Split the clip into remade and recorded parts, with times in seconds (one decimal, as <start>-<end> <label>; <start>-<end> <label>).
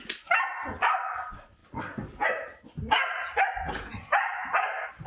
0.0-5.1 recorded